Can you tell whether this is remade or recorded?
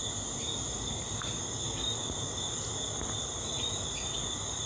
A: recorded